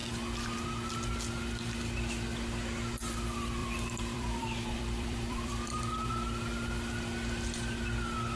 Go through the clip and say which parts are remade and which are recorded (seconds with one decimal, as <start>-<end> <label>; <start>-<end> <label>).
0.0-3.6 recorded; 3.6-6.1 remade; 6.1-8.4 recorded